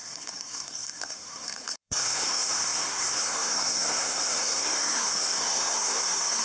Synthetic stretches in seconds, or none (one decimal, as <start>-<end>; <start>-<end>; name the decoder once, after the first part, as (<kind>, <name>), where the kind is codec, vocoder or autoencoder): 0.0-6.4 (codec, SNAC)